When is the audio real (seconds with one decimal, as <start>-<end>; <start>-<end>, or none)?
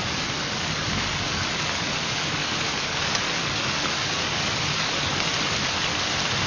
5.3-6.5